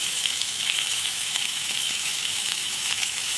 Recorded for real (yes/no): no